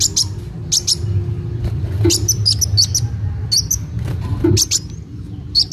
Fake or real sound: real